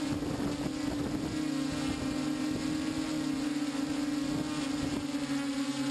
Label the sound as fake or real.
real